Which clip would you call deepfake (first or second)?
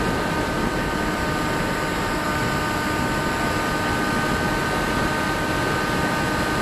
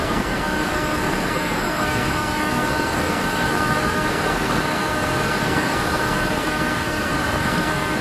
second